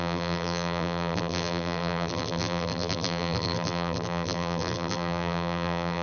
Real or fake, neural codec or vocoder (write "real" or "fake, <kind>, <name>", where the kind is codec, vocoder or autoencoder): fake, vocoder, BigVGAN v2